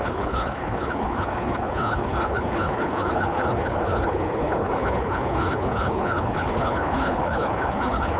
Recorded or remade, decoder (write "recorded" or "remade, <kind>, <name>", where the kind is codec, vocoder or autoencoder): remade, codec, HILCodec